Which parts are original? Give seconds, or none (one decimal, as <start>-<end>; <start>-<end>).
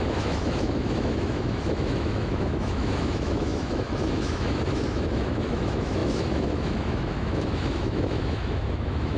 none